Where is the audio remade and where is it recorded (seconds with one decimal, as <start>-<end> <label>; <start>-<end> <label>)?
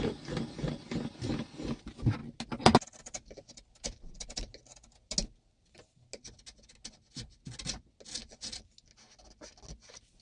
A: 0.0-10.2 recorded